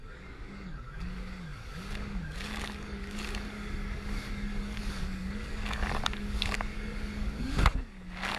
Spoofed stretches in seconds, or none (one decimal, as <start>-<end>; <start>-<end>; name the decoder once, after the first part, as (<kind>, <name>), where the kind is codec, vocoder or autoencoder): 0.0-8.4 (codec, DAC)